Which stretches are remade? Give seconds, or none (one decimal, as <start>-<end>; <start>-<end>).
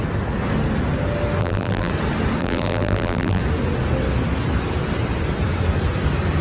1.4-1.9; 2.4-3.4